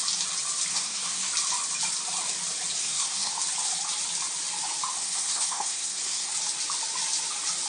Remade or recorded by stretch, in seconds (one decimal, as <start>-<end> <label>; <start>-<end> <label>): 0.0-0.7 recorded; 0.7-1.3 remade; 1.3-2.8 recorded; 2.8-3.3 remade; 3.3-5.0 recorded; 5.0-6.3 remade; 6.3-7.7 recorded